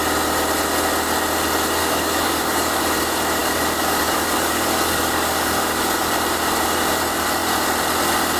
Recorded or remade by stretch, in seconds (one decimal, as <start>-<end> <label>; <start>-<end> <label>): 0.0-1.8 recorded; 1.8-2.8 remade; 2.8-3.4 recorded; 3.4-6.1 remade; 6.1-8.4 recorded